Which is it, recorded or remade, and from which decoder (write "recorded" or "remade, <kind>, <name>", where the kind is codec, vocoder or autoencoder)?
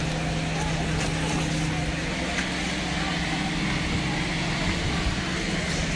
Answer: recorded